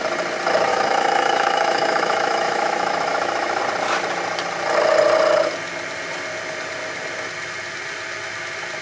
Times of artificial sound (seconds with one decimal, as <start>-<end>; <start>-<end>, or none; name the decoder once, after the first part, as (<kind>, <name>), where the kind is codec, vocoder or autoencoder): 0.7-3.6 (autoencoder, DAC-VAE)